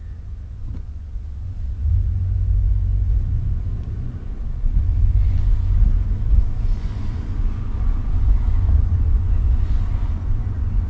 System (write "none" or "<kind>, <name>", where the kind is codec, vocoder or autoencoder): vocoder, Vocos